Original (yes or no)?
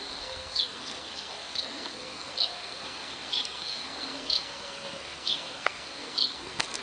no